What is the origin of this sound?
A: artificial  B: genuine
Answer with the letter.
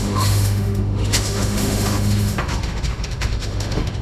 A